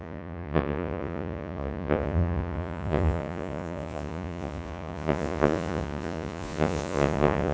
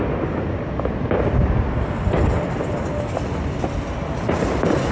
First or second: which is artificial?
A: first